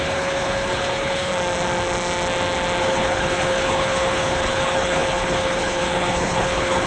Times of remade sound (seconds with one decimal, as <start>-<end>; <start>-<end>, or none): 0.0-1.3; 2.8-6.9